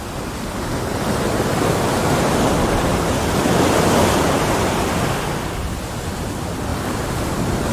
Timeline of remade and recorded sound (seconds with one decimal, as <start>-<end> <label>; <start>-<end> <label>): 0.0-7.7 recorded